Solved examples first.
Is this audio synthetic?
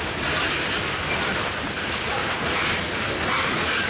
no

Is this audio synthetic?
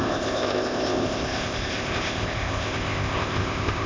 yes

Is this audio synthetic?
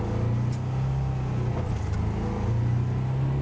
no